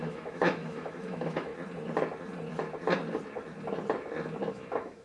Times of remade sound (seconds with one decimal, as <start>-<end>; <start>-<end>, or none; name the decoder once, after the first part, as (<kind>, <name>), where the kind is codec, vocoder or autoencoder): 0.0-1.5 (autoencoder, DAC-VAE); 4.5-5.0